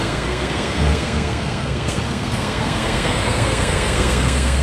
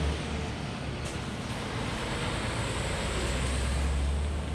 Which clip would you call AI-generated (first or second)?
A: first